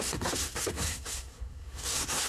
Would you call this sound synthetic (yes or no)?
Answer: yes